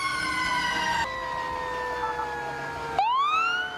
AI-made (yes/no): no